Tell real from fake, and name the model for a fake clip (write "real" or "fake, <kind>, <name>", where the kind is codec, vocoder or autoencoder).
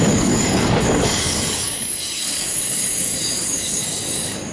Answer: fake, codec, DAC